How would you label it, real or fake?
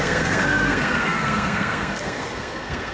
fake